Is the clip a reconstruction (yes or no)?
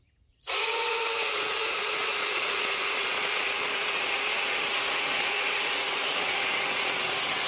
yes